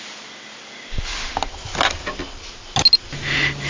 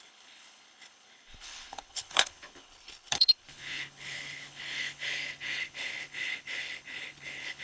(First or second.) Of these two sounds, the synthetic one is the second